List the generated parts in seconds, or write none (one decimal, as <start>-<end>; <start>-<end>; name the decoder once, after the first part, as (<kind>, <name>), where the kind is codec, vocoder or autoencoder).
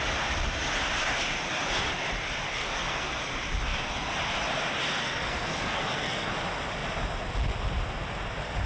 2.5-3.2 (codec, SNAC); 5.0-6.3